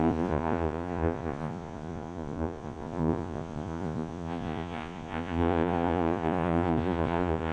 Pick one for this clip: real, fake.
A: fake